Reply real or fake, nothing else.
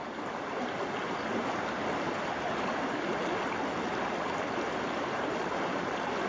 real